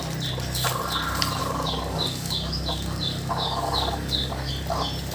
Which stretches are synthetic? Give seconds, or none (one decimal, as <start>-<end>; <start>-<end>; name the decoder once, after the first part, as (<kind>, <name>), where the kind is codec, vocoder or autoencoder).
1.4-4.5 (codec, DAC)